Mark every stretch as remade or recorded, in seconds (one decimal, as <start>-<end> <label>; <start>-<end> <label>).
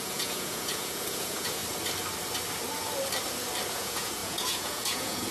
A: 0.0-1.6 remade; 1.6-3.7 recorded; 3.7-5.3 remade